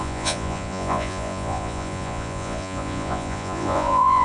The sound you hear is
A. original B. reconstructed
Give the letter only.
B